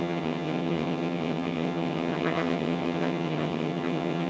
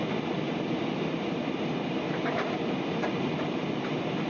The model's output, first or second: first